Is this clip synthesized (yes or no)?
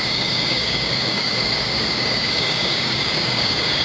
yes